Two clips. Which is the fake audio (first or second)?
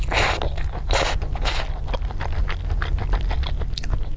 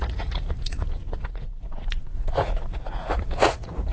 second